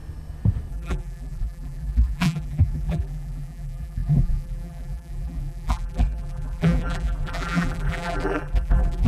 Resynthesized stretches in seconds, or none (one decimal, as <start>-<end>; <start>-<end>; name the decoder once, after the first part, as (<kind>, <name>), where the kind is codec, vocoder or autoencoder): 0.7-9.1 (vocoder, BigVGAN v2)